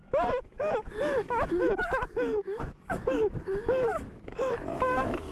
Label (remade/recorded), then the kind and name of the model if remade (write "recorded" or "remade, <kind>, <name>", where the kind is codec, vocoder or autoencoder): remade, autoencoder, DAC-VAE